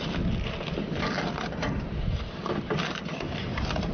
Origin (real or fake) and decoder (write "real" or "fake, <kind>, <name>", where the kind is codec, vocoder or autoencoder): real